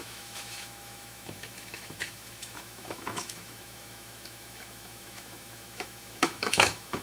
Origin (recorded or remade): remade